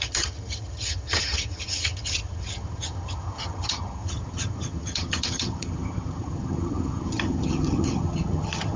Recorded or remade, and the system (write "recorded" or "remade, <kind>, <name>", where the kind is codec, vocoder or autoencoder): remade, vocoder, HiFi-GAN